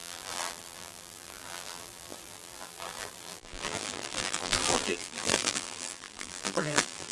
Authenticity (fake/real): fake